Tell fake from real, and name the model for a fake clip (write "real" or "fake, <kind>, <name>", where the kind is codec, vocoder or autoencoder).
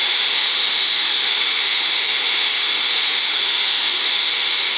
fake, autoencoder, DAC-VAE